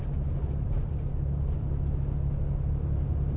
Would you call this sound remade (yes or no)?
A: no